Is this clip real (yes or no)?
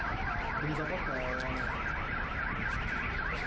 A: yes